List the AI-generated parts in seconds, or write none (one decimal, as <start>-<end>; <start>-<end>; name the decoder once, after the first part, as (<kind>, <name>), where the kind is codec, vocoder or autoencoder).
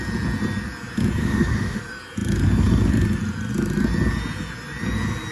1.2-1.8 (autoencoder, DAC-VAE)